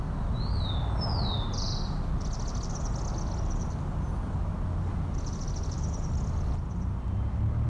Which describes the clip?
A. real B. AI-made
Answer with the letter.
A